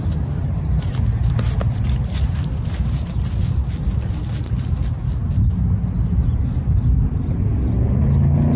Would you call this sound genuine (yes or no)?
yes